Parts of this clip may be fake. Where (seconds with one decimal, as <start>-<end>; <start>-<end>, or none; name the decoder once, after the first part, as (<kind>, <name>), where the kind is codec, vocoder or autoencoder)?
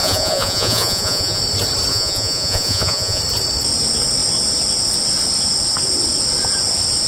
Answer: 0.0-1.4 (vocoder, Vocos); 1.9-3.2